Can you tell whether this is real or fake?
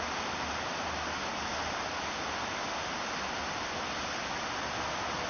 real